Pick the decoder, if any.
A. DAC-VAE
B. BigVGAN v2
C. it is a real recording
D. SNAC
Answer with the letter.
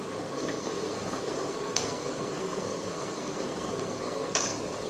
D